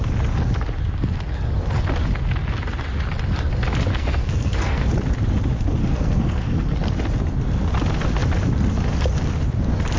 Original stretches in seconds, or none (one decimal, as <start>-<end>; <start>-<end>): 0.0-3.9; 4.9-5.8; 6.8-10.0